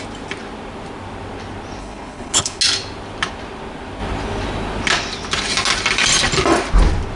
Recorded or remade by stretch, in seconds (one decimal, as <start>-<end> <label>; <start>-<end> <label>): 0.0-1.8 recorded; 1.8-2.6 remade; 2.6-7.2 recorded

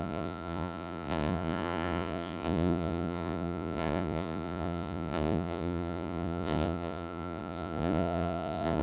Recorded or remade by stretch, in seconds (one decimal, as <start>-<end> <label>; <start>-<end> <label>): 0.0-8.8 remade

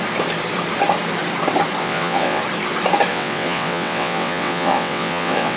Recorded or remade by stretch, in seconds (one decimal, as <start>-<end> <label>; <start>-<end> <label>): 0.0-1.8 recorded; 1.8-2.4 remade; 2.4-3.1 recorded; 3.1-5.6 remade

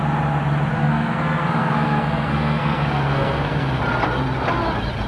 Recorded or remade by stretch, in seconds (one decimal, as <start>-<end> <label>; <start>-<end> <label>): 0.0-0.7 recorded; 0.7-3.8 remade; 3.8-5.1 recorded

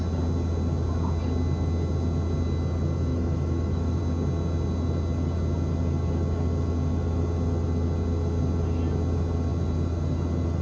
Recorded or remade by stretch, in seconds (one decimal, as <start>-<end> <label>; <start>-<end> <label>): 0.0-3.1 recorded; 3.1-4.0 remade; 4.0-10.6 recorded

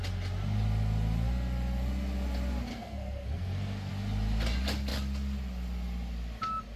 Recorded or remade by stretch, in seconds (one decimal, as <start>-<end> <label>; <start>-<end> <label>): 0.0-2.7 recorded; 2.7-3.9 remade; 3.9-6.8 recorded

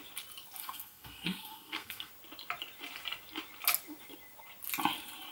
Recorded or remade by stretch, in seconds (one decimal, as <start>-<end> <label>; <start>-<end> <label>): 0.0-0.6 recorded; 0.6-2.1 remade; 2.1-5.3 recorded